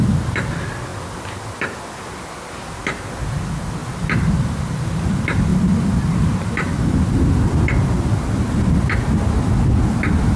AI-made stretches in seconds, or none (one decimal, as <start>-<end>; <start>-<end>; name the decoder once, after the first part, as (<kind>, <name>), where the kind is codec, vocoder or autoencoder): none